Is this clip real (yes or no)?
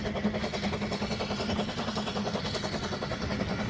yes